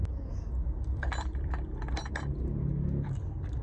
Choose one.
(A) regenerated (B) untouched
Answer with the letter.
B